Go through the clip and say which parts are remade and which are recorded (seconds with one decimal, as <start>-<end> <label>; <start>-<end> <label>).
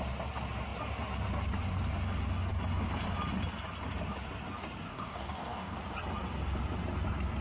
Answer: 0.0-4.9 recorded; 4.9-5.8 remade; 5.8-7.4 recorded